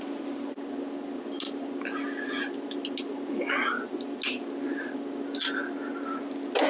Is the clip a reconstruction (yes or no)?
no